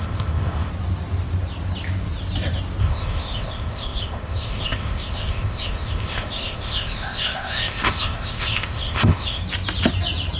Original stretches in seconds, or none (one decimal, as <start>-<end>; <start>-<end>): 0.7-2.8; 9.4-10.4